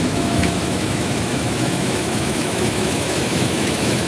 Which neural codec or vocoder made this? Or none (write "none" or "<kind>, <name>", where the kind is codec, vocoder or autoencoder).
autoencoder, DAC-VAE